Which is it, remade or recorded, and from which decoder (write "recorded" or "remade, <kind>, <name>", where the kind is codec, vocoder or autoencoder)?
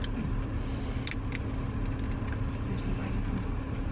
recorded